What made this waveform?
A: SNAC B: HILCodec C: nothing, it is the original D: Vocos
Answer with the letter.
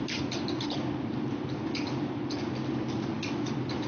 C